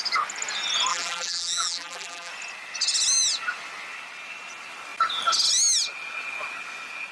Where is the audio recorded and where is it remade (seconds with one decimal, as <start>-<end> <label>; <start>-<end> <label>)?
0.0-0.9 recorded; 0.9-2.3 remade; 2.3-7.1 recorded